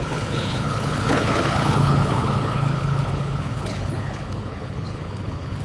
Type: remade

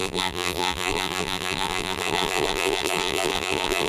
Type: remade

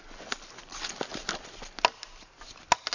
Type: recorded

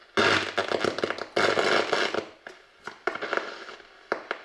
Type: recorded